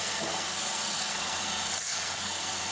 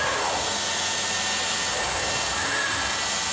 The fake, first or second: first